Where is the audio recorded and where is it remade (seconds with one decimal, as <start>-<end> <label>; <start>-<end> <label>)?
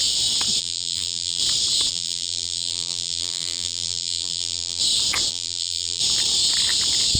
0.0-0.6 recorded; 0.6-1.4 remade; 1.4-1.9 recorded; 1.9-4.8 remade; 4.8-5.3 recorded; 5.3-6.0 remade; 6.0-7.2 recorded